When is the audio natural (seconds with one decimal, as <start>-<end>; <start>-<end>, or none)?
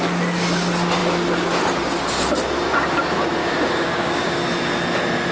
0.0-3.4; 4.4-5.3